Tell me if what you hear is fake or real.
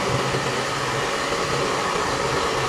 real